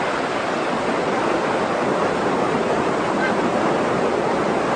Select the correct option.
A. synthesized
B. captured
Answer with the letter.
B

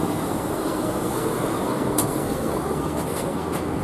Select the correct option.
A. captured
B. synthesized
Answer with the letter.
B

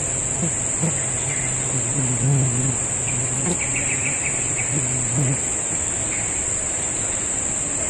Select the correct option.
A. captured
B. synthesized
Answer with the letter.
A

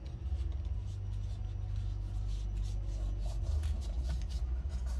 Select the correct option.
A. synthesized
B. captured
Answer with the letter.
B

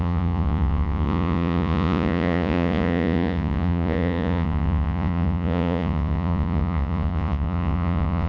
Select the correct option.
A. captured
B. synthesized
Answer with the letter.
B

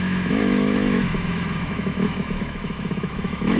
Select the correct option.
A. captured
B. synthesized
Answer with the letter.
B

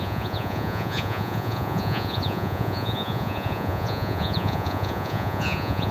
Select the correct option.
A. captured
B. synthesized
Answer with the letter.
B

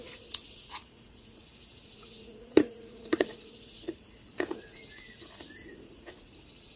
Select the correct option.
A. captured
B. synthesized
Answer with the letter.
B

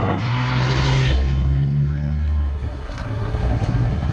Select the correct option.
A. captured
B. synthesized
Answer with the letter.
B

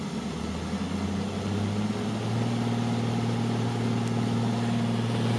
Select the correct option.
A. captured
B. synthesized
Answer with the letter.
A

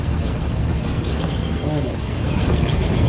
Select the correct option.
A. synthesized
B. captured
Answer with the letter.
A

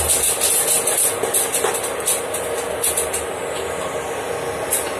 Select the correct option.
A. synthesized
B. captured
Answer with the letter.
B